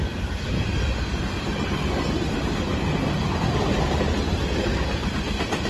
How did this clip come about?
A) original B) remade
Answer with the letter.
A